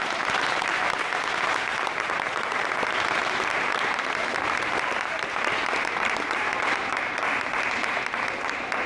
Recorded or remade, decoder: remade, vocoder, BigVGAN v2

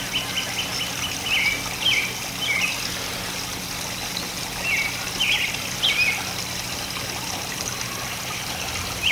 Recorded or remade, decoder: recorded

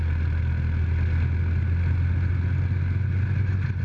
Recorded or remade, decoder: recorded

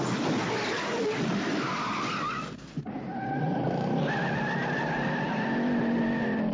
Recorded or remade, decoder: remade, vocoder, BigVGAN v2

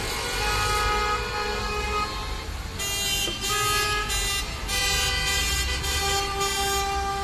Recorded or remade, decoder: recorded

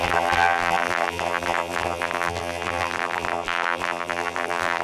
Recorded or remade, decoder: remade, vocoder, BigVGAN v2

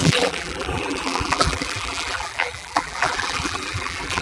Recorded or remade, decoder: remade, vocoder, BigVGAN v2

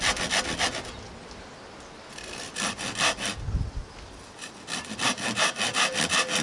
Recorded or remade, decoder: recorded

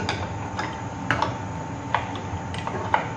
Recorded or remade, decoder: recorded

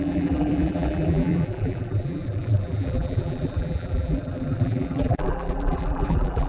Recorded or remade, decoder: remade, vocoder, BigVGAN v2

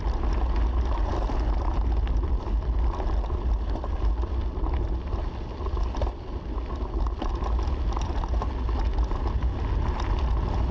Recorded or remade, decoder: recorded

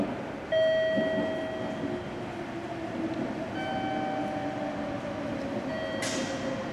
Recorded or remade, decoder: recorded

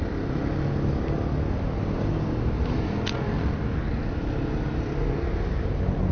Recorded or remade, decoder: recorded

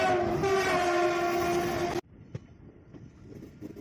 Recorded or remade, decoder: recorded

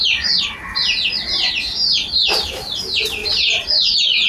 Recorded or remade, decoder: recorded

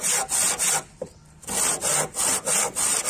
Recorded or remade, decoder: recorded